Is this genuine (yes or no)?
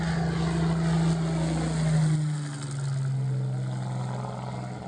yes